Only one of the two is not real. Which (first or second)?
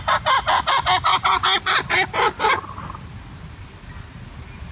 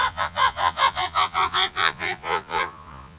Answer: second